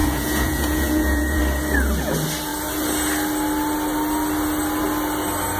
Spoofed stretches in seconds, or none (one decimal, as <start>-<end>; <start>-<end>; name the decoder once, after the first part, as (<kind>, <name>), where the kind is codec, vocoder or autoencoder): 0.0-1.4 (vocoder, Vocos)